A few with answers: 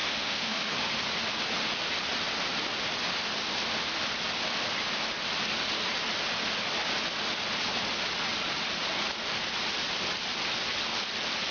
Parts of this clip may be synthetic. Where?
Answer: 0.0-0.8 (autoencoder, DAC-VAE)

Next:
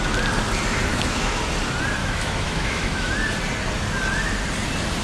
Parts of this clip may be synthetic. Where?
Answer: 0.9-1.4 (autoencoder, DAC-VAE); 2.0-3.1

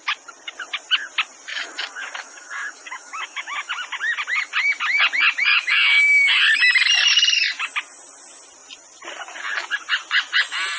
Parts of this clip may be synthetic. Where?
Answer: 1.5-3.7 (autoencoder, DAC-VAE); 5.5-6.4

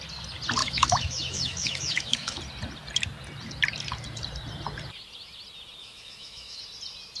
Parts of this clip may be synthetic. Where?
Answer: 0.6-2.4 (autoencoder, DAC-VAE); 5.8-6.6

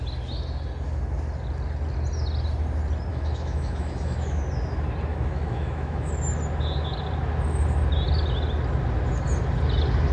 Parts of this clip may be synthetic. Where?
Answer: 3.1-4.4 (autoencoder, DAC-VAE); 5.1-6.1

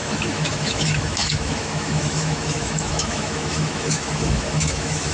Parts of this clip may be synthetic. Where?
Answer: 0.0-5.1 (autoencoder, DAC-VAE)

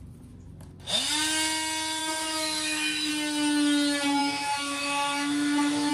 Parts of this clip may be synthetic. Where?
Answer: 2.0-3.1 (autoencoder, DAC-VAE); 4.2-5.9